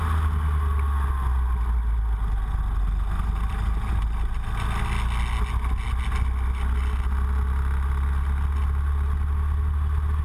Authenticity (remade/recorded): recorded